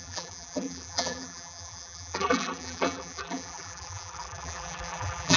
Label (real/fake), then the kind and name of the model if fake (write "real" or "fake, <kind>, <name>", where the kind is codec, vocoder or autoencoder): fake, vocoder, BigVGAN v2